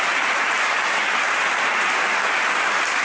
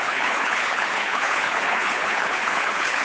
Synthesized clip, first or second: second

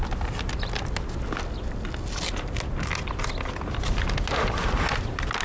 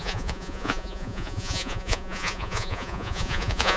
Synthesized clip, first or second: second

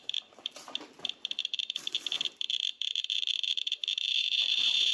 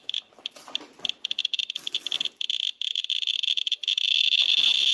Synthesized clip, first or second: first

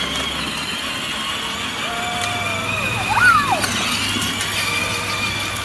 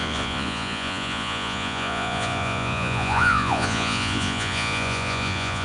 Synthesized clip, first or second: second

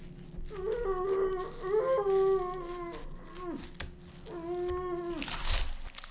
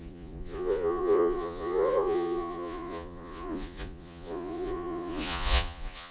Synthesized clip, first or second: second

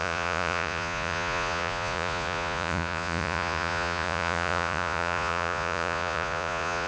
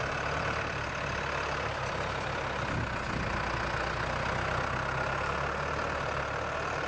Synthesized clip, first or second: first